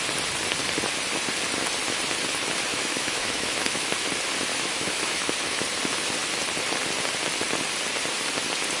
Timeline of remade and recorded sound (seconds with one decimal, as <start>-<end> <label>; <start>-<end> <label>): 0.0-2.7 recorded; 2.7-3.9 remade; 3.9-4.5 recorded; 4.5-5.6 remade; 5.6-8.8 recorded